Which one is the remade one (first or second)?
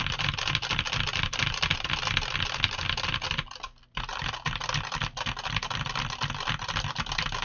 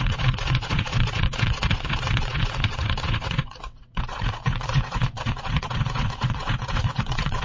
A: second